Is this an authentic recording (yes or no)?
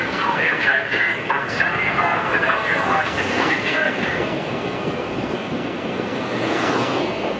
no